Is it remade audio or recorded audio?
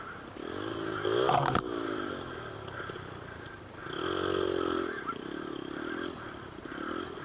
recorded